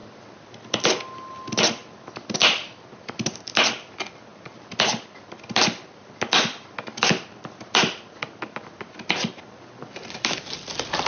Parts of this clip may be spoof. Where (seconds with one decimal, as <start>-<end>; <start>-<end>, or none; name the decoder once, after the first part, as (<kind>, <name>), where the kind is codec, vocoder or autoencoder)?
none

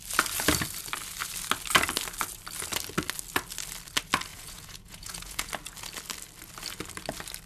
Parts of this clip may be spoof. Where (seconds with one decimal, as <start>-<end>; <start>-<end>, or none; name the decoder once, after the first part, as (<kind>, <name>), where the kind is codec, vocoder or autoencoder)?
4.3-5.5 (vocoder, Vocos)